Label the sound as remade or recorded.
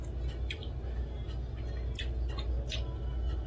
recorded